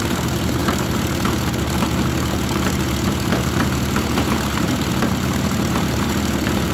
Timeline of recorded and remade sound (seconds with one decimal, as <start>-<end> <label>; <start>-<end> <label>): 0.0-6.7 remade